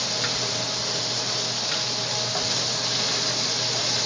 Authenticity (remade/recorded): recorded